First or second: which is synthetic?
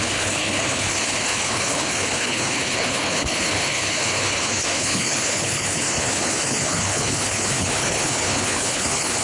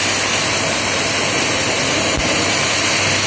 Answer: first